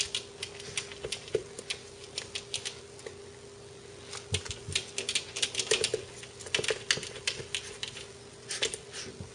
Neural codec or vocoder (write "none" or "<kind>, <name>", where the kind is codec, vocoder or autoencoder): none